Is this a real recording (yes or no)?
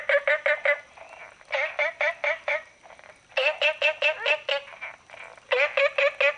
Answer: yes